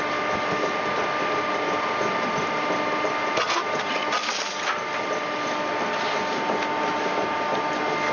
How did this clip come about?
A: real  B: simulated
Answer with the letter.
A